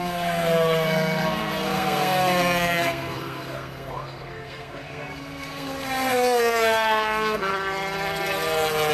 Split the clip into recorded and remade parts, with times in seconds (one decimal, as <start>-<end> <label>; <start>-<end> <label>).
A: 0.0-7.5 remade; 7.5-8.9 recorded